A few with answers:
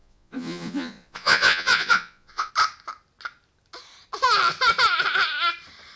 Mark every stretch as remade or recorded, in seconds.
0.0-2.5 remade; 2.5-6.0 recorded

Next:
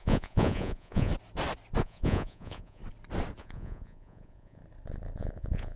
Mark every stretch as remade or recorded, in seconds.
0.0-1.1 remade; 1.1-1.8 recorded; 1.8-2.8 remade; 2.8-3.4 recorded; 3.4-4.6 remade; 4.6-5.2 recorded; 5.2-5.8 remade

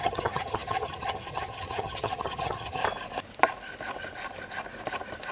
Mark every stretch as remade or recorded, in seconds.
0.0-2.8 remade; 2.8-5.3 recorded